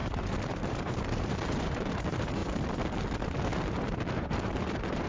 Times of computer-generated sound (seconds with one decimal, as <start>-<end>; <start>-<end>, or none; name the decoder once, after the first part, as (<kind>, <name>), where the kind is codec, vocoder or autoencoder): 0.0-2.4 (vocoder, BigVGAN v2); 3.6-5.1